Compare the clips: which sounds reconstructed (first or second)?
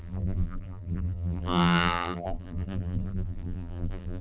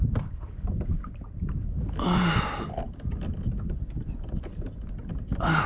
first